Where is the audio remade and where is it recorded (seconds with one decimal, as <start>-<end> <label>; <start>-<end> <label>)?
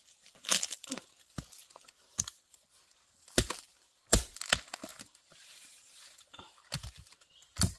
0.0-4.9 recorded; 4.9-5.5 remade; 5.5-7.8 recorded